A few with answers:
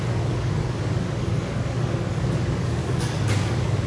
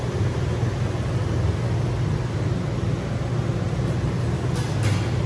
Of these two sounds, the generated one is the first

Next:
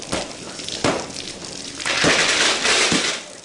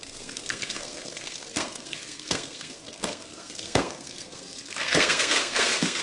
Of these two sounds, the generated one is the second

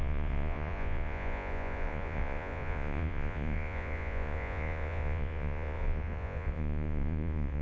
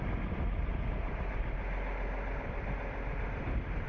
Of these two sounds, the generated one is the first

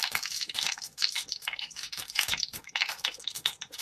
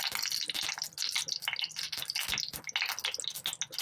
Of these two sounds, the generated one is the first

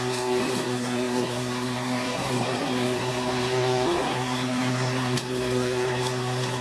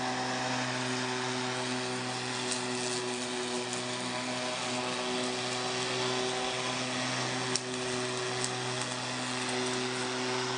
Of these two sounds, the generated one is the first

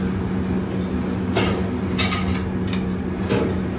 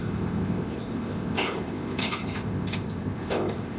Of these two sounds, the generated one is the second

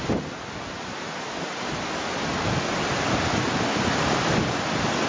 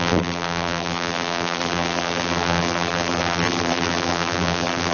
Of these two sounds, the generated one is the second